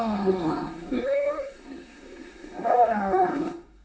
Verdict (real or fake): fake